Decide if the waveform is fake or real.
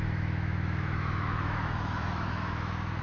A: fake